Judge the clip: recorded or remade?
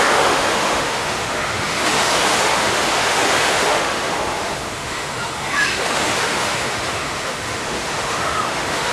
remade